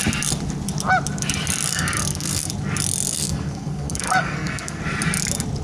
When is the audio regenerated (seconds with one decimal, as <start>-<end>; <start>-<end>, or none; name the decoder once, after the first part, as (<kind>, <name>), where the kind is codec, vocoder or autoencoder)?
1.7-2.5 (codec, SNAC); 3.1-4.8